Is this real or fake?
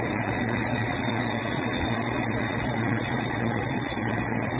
fake